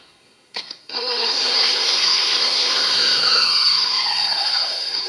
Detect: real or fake fake